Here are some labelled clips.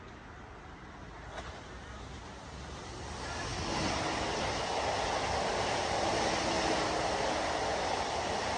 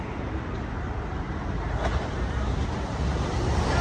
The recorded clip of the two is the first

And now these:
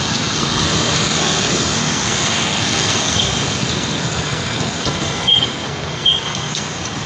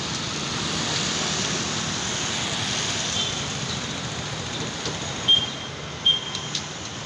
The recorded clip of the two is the second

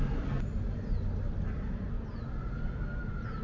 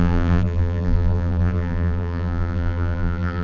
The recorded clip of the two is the first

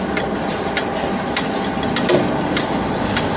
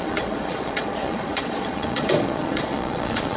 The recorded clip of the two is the first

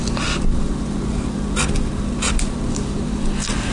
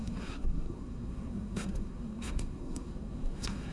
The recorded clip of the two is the first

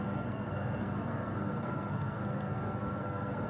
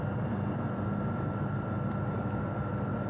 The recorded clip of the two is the second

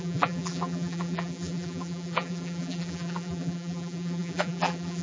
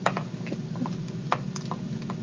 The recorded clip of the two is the second